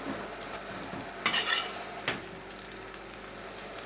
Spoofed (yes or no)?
no